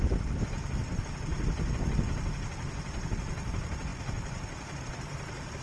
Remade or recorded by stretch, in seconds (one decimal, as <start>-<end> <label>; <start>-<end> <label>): 0.0-5.6 recorded